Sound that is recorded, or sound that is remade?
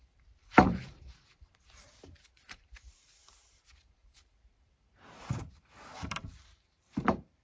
remade